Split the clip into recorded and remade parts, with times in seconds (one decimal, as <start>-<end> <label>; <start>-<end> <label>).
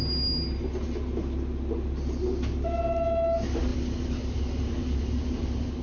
0.0-5.8 recorded